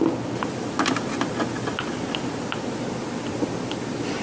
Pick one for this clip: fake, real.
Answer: real